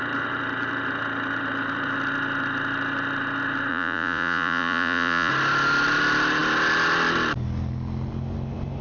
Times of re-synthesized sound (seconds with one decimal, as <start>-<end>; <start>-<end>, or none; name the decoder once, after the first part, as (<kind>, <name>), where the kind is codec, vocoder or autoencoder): 3.7-5.3 (vocoder, Vocos)